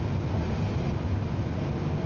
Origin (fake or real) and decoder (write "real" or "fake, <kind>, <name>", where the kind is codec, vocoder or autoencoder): real